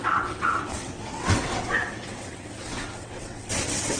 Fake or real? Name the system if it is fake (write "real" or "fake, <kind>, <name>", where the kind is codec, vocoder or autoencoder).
fake, vocoder, WaveNeXt